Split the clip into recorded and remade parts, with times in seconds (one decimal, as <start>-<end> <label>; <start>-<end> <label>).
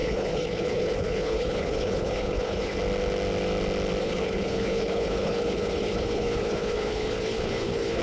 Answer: 0.0-2.8 remade; 2.8-4.0 recorded; 4.0-8.0 remade